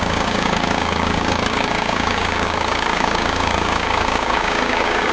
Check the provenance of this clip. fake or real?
fake